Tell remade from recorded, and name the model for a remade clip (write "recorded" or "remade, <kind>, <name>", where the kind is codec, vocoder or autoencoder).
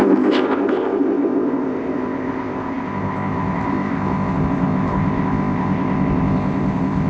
remade, codec, ZipCodec